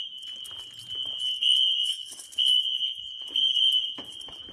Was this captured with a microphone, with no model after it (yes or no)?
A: yes